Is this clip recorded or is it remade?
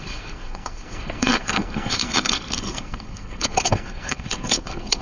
remade